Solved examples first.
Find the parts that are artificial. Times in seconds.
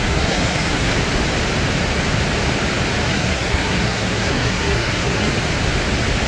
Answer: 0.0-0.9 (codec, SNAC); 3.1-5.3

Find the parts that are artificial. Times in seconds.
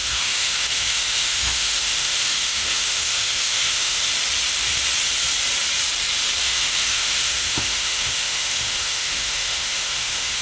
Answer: 0.0-4.1 (autoencoder, DAC-VAE); 6.4-10.4